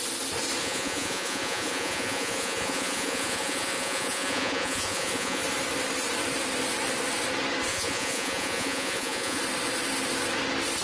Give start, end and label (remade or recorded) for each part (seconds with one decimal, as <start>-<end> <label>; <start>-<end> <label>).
0.0-0.6 recorded; 0.6-5.4 remade; 5.4-7.7 recorded; 7.7-9.4 remade; 9.4-10.8 recorded